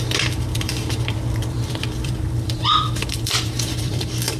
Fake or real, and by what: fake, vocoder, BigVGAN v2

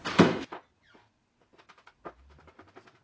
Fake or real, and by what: real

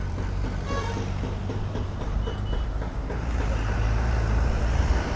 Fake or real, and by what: fake, vocoder, BigVGAN v2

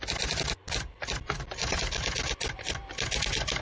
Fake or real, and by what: fake, vocoder, BigVGAN v2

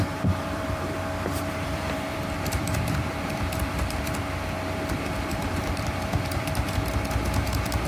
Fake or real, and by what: fake, vocoder, BigVGAN v2